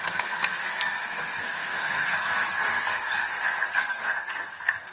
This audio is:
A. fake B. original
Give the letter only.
A